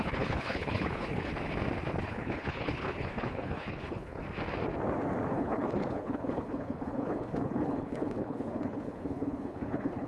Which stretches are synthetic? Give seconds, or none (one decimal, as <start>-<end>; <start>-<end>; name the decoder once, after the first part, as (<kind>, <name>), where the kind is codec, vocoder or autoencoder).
0.0-1.3 (codec, HILCodec); 2.0-4.2; 5.3-10.1